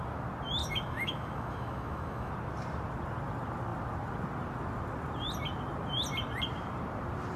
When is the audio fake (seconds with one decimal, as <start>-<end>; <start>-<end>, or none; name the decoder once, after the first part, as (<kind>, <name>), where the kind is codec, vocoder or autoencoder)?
0.6-2.3 (autoencoder, DAC-VAE)